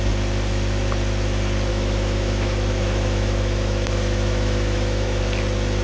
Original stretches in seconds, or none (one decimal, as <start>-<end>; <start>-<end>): 0.0-1.7; 5.2-5.8